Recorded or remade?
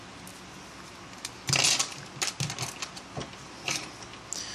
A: recorded